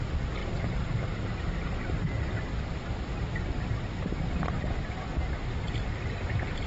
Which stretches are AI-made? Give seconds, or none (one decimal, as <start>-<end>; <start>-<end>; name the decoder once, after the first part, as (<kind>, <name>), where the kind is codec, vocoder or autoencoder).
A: 0.4-2.8 (vocoder, BigVGAN v2)